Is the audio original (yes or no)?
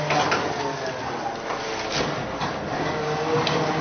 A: yes